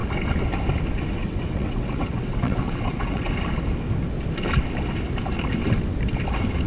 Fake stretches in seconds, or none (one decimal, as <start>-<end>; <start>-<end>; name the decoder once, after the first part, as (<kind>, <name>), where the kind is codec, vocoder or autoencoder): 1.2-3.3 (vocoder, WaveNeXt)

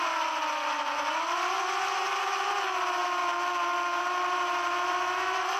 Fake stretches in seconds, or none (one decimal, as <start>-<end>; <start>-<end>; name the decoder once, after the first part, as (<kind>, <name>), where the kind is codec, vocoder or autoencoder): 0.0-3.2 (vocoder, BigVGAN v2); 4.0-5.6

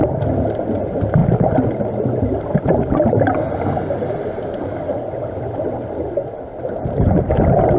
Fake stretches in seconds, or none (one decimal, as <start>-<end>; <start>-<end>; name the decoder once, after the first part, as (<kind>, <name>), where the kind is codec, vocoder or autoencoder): none

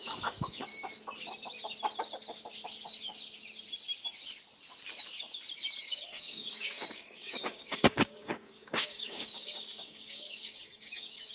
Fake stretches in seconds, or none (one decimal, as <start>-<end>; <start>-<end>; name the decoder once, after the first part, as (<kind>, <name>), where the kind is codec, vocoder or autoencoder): 0.0-0.7 (codec, DAC); 5.8-11.3

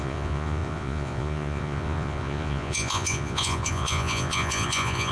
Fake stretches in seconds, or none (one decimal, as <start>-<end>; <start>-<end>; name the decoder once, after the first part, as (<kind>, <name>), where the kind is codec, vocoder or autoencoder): 0.0-5.1 (vocoder, Vocos)

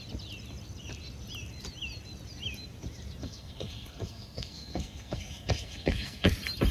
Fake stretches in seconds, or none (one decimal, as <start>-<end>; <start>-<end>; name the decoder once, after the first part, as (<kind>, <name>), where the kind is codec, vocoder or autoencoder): 3.2-6.3 (codec, SNAC)

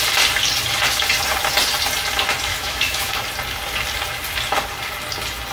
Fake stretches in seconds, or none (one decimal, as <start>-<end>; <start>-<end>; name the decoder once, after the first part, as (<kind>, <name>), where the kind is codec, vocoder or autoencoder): 2.5-3.1 (autoencoder, DAC-VAE)

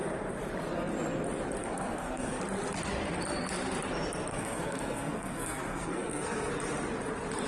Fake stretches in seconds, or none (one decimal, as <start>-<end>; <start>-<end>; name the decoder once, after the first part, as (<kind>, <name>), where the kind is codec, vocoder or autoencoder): 1.6-2.4 (codec, SNAC); 4.3-6.5